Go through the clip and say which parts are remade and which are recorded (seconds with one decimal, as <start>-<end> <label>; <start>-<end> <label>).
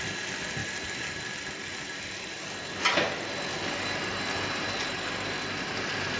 0.0-6.2 recorded